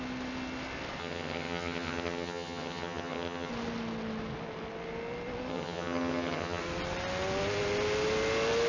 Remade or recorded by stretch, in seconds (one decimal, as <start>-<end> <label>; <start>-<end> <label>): 0.0-1.0 recorded; 1.0-3.5 remade; 3.5-5.5 recorded; 5.5-6.6 remade; 6.6-8.7 recorded